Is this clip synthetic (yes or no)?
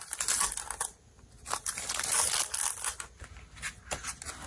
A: no